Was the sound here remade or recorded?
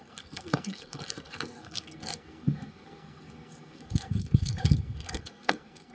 remade